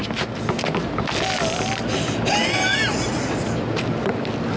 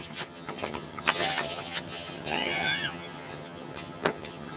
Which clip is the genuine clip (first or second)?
first